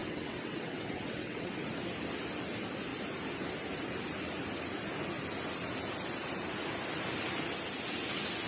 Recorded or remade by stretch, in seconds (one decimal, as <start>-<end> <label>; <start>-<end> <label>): 0.0-1.7 remade; 1.7-8.5 recorded